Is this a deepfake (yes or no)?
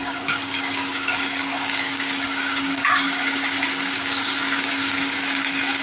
yes